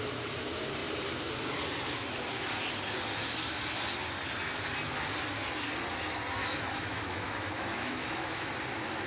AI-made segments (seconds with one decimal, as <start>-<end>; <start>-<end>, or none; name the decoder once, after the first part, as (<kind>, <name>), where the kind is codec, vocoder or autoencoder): 6.4-8.5 (autoencoder, DAC-VAE)